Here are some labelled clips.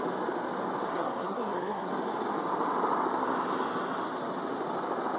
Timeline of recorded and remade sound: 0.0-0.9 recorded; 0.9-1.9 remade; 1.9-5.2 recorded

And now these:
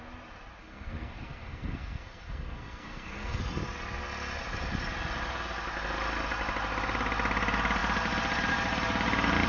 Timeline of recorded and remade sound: 0.0-0.6 recorded; 0.6-3.4 remade; 3.4-9.5 recorded

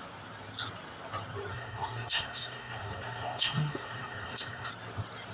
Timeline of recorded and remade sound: 0.0-1.5 recorded; 1.5-4.7 remade; 4.7-5.3 recorded

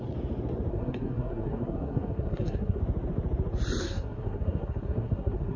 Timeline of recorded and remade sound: 0.0-0.7 recorded; 0.7-2.8 remade; 2.8-3.8 recorded; 3.8-5.6 remade

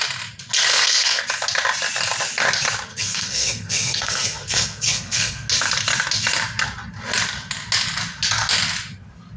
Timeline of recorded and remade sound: 0.0-0.7 recorded; 0.7-1.2 remade; 1.2-2.9 recorded; 2.9-5.5 remade; 5.5-9.4 recorded

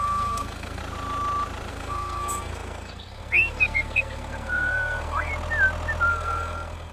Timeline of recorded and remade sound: 0.0-0.8 remade; 0.8-1.7 recorded; 1.7-5.3 remade; 5.3-6.1 recorded; 6.1-6.9 remade